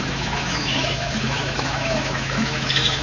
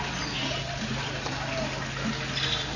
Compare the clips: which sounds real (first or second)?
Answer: second